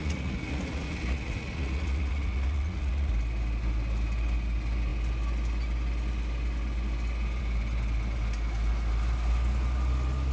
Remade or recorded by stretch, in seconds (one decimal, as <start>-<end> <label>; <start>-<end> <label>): 0.0-3.1 remade; 3.1-10.3 recorded